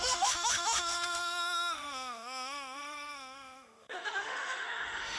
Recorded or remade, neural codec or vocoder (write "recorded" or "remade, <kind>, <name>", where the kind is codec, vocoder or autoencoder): remade, autoencoder, DAC-VAE